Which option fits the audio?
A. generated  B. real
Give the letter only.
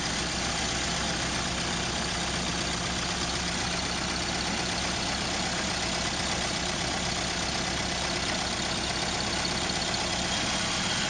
B